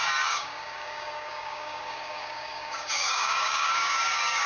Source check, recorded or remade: remade